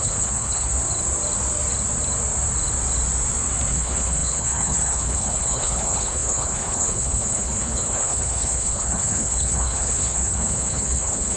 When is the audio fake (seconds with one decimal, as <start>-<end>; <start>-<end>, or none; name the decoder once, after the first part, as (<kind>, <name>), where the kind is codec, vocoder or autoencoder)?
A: 0.0-0.7 (codec, HILCodec); 3.7-11.4